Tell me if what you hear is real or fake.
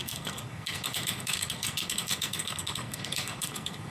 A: fake